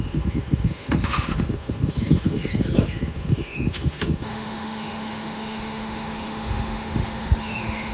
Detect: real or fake fake